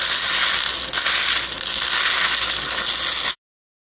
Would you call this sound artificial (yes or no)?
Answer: no